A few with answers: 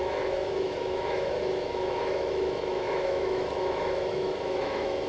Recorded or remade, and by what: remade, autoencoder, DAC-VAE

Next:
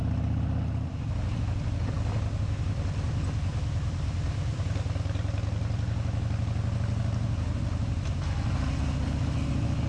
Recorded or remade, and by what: recorded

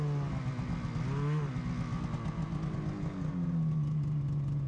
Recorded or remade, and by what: recorded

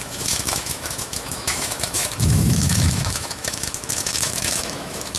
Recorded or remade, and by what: remade, autoencoder, DAC-VAE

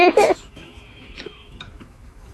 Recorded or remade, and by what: remade, autoencoder, DAC-VAE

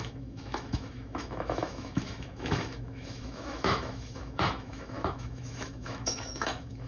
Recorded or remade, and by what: remade, autoencoder, DAC-VAE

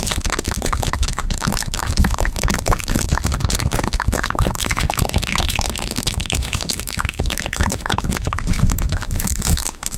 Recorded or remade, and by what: remade, autoencoder, DAC-VAE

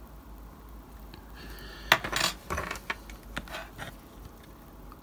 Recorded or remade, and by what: recorded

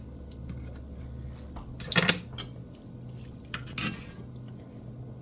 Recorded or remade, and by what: recorded